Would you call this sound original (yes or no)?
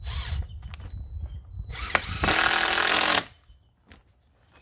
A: yes